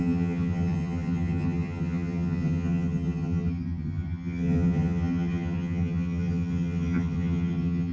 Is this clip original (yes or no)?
no